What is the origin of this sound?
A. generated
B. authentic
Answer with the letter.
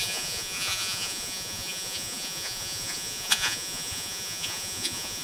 A